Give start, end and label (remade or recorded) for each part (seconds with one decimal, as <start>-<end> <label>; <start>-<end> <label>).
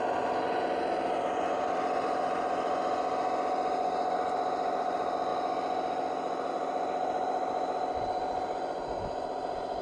0.0-9.8 recorded